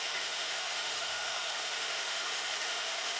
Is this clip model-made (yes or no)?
yes